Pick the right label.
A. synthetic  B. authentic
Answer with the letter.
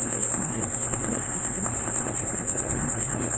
A